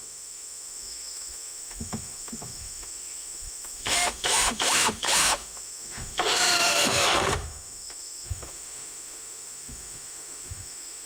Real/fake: fake